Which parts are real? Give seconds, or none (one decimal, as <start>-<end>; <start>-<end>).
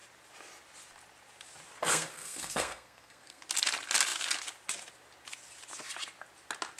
0.0-1.8; 3.4-6.8